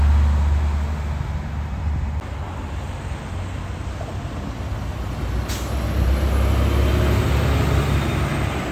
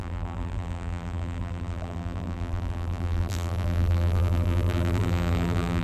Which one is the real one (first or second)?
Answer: first